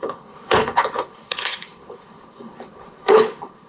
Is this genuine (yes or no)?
no